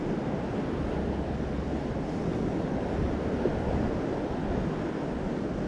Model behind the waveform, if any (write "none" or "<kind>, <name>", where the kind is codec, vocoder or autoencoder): none